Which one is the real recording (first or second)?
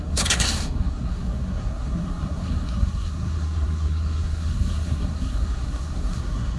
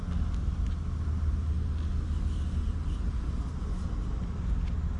second